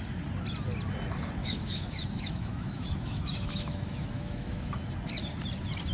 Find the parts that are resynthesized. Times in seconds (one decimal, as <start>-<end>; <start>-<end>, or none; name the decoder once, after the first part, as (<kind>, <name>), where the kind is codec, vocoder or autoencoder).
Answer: 1.4-4.7 (autoencoder, DAC-VAE)